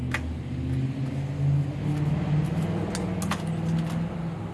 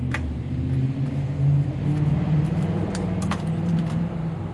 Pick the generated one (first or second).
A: second